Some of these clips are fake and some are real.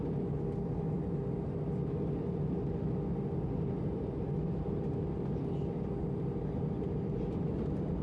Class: real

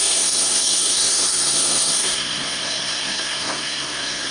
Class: fake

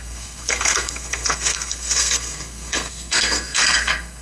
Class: fake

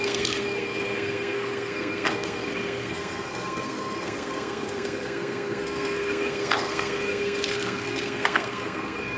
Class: fake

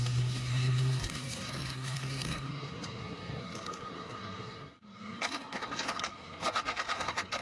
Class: fake